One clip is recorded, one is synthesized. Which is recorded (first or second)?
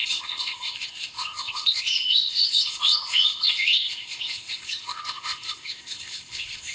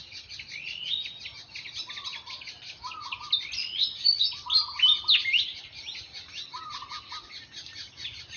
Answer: second